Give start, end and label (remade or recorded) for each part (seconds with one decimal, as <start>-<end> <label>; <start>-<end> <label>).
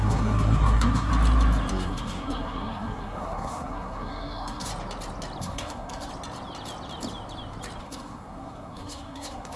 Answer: 0.0-1.1 remade; 1.1-1.7 recorded; 1.7-4.7 remade; 4.7-5.4 recorded; 5.4-6.1 remade; 6.1-7.8 recorded; 7.8-9.6 remade